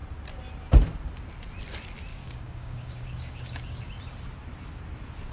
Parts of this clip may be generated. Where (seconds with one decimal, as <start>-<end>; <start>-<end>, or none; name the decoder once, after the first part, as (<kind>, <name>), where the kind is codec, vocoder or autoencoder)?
2.1-3.9 (codec, DAC)